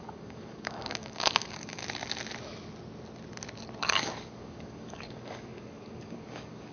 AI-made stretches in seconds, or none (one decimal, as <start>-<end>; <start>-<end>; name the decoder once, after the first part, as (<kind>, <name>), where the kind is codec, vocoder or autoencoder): 0.0-1.8 (codec, DAC); 3.8-6.7